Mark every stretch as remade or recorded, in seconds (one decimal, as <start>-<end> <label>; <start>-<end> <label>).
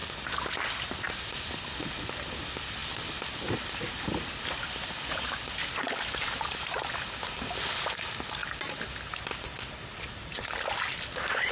0.0-11.5 recorded